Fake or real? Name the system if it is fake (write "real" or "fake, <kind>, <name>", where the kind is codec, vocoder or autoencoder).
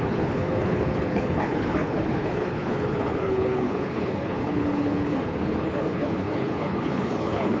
fake, codec, HILCodec